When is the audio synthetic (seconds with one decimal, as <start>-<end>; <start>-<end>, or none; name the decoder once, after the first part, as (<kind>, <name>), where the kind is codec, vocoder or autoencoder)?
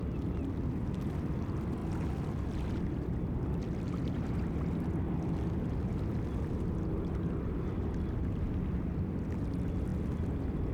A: none